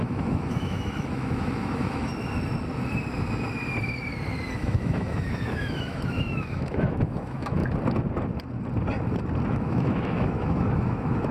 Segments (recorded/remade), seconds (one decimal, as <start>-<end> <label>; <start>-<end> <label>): 0.0-2.1 remade; 2.1-4.6 recorded; 4.6-7.6 remade; 7.6-9.5 recorded; 9.5-11.3 remade